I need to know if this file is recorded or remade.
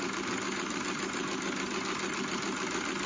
recorded